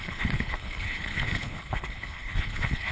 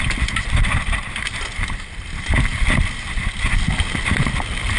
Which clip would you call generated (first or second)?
first